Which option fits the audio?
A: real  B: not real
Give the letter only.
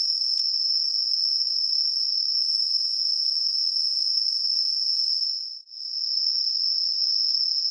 A